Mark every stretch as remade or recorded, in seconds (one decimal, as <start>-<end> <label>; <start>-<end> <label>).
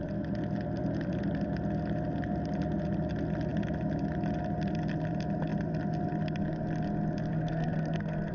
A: 0.0-7.3 recorded; 7.3-8.3 remade